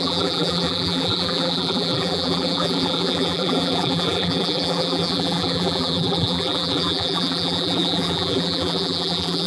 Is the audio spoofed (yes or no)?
yes